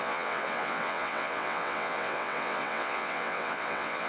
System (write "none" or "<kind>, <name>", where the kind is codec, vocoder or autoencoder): vocoder, WaveNeXt